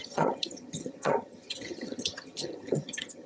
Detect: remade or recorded remade